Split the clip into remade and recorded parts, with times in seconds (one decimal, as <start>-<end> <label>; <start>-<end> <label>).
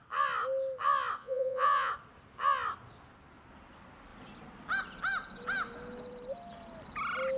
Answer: 0.0-1.2 recorded; 1.2-1.9 remade; 1.9-7.4 recorded